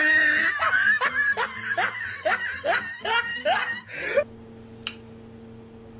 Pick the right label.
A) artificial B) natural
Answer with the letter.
B